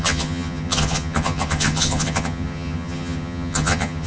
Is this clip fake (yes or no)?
yes